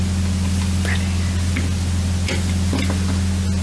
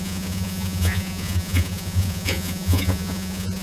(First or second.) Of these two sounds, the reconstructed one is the second